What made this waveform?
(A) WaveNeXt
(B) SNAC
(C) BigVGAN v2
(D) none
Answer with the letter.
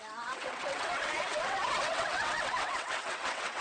A